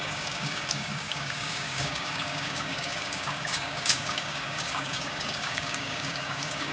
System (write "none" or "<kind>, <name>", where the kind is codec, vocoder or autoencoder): codec, DAC